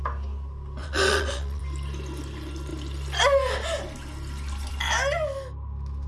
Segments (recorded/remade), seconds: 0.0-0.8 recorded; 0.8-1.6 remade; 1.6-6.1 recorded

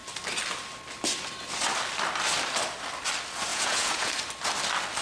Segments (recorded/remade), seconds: 0.0-3.5 recorded; 3.5-4.1 remade; 4.1-5.0 recorded

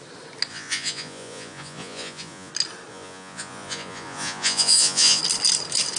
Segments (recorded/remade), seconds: 0.0-0.5 recorded; 0.5-2.5 remade; 2.5-2.9 recorded; 2.9-5.2 remade; 5.2-6.0 recorded

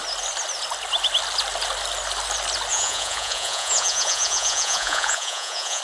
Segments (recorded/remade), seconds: 0.0-2.7 recorded; 2.7-5.8 remade

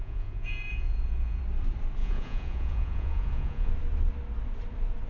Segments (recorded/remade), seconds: 0.0-1.4 remade; 1.4-2.0 recorded; 2.0-3.7 remade; 3.7-5.1 recorded

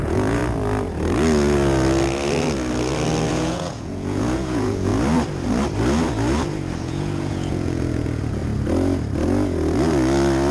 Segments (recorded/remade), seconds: 0.0-0.4 remade; 0.4-3.3 recorded; 3.3-4.9 remade; 4.9-6.8 recorded; 6.8-8.4 remade; 8.4-10.5 recorded